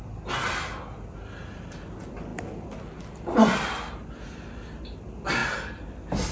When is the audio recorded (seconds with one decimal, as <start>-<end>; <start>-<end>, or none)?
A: 0.0-6.3